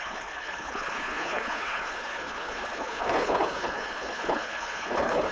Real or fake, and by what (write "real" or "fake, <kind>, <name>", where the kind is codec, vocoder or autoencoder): fake, codec, HILCodec